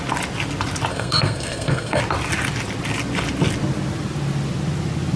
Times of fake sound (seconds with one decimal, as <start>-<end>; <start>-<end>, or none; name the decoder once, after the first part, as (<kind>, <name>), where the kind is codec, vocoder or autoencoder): 0.9-2.0 (codec, SNAC)